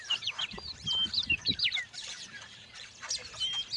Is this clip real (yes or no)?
no